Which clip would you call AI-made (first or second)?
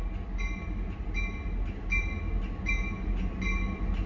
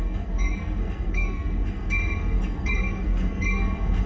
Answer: second